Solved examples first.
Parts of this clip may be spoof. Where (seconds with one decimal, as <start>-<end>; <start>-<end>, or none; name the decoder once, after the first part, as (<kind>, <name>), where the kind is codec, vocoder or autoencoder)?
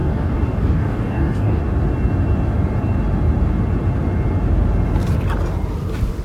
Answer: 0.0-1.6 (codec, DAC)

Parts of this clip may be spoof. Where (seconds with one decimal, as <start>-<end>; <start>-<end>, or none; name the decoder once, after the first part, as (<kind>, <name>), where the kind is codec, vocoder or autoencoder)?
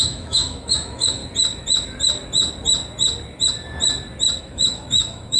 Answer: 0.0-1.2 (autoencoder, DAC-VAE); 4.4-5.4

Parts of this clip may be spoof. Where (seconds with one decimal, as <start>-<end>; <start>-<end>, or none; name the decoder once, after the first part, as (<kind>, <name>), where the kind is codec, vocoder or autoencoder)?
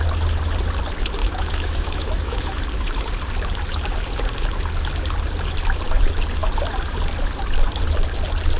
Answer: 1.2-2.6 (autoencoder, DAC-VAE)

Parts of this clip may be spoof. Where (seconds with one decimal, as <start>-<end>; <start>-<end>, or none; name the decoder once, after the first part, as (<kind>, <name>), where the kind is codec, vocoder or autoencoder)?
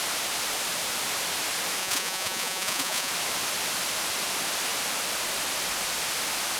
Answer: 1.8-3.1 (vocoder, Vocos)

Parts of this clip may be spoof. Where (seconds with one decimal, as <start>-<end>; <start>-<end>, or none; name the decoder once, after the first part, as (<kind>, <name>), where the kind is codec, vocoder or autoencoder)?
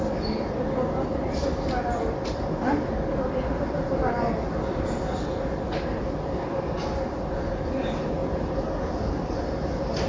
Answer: none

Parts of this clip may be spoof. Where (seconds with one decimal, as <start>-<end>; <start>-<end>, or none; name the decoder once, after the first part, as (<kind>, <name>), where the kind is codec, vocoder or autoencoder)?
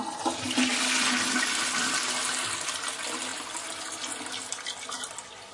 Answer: none